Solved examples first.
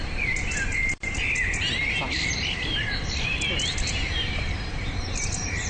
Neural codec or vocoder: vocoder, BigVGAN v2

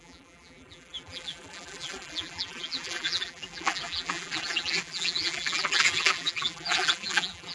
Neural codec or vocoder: vocoder, BigVGAN v2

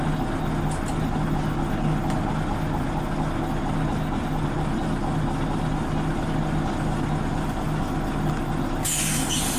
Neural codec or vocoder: none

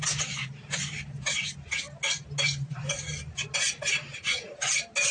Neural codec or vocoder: none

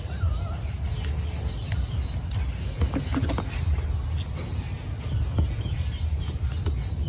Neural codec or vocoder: none